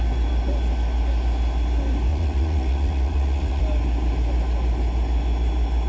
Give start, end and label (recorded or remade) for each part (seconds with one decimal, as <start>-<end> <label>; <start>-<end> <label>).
0.0-2.1 recorded; 2.1-3.6 remade; 3.6-5.9 recorded